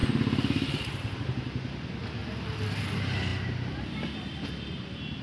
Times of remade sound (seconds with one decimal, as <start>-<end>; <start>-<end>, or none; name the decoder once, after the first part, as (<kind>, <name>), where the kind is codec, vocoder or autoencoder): none